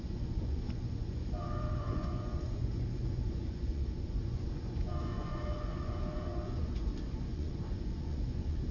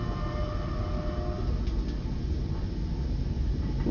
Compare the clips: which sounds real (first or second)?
second